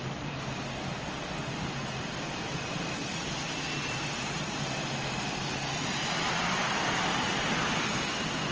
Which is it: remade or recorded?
recorded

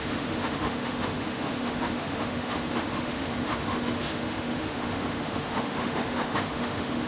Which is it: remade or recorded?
remade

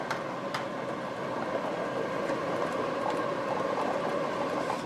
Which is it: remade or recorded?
recorded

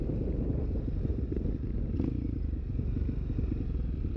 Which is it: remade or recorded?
recorded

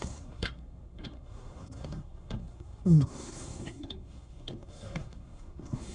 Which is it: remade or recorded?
remade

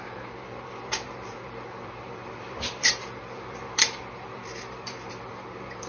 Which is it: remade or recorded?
remade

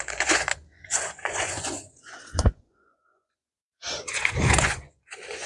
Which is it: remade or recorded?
remade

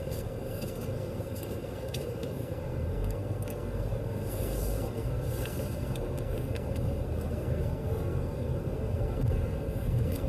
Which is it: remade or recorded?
remade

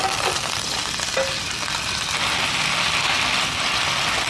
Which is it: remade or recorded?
recorded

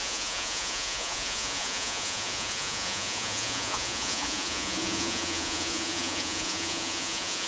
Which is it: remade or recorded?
remade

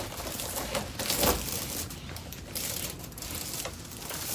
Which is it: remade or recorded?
recorded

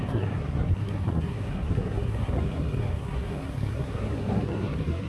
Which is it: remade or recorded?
remade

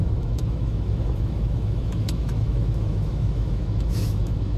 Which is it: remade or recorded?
remade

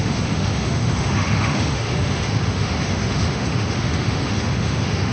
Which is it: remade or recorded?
remade